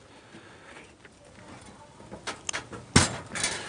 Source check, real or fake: real